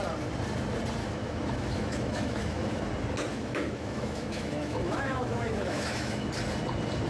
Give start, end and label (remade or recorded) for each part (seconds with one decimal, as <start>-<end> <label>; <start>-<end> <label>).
0.0-1.0 recorded; 1.0-2.8 remade; 2.8-3.3 recorded; 3.3-6.3 remade; 6.3-7.1 recorded